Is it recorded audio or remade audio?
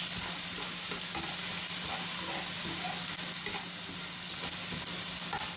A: recorded